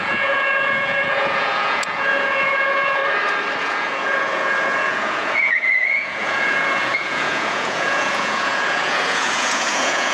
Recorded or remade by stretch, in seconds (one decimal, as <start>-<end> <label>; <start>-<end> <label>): 0.0-3.0 remade; 3.0-3.6 recorded; 3.6-10.1 remade